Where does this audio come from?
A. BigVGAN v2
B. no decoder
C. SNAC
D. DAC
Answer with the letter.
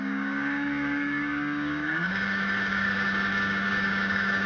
D